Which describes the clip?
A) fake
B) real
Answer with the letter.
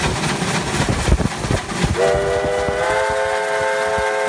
B